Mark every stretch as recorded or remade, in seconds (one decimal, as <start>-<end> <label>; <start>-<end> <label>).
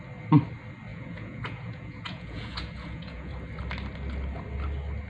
0.0-0.9 recorded; 0.9-3.3 remade; 3.3-5.1 recorded